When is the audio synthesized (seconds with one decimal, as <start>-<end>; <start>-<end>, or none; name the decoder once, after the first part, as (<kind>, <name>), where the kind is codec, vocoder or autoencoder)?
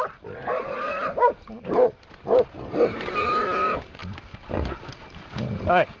0.5-3.3 (vocoder, BigVGAN v2)